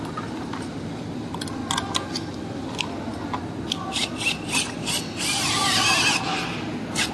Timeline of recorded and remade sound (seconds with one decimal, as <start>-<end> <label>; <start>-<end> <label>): 0.0-7.1 recorded